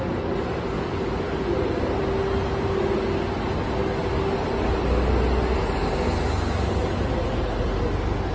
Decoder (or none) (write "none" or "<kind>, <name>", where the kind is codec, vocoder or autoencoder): none